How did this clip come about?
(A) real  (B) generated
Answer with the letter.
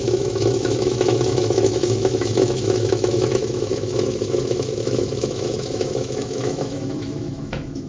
B